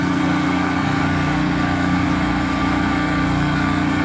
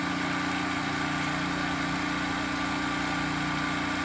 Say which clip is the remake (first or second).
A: first